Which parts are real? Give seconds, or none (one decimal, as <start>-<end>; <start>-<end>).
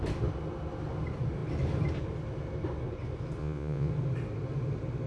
0.0-3.4; 3.9-5.1